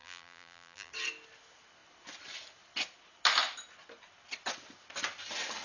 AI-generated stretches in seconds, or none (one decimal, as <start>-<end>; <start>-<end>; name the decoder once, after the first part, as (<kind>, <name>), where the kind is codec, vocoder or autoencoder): 0.0-0.9 (vocoder, BigVGAN v2)